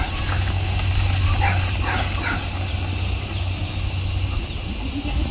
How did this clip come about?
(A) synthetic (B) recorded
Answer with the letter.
B